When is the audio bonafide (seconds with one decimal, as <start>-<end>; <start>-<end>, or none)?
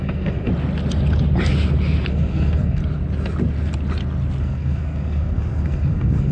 0.5-2.1; 2.8-4.4